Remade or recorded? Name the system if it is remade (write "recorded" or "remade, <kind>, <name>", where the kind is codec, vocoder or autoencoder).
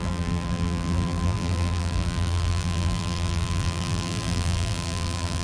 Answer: remade, vocoder, BigVGAN v2